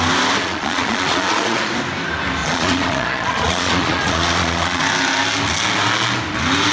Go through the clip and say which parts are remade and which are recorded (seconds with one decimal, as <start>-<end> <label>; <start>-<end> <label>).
0.0-0.4 recorded; 0.4-1.7 remade; 1.7-2.4 recorded; 2.4-4.8 remade; 4.8-6.7 recorded